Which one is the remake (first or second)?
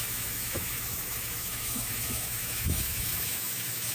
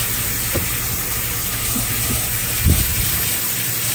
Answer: first